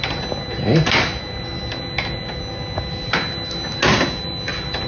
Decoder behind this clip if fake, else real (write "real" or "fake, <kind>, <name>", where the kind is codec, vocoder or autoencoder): real